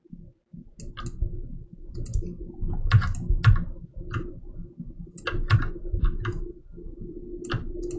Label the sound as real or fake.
real